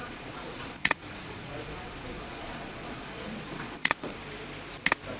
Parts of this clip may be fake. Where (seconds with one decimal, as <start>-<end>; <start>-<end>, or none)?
0.0-4.2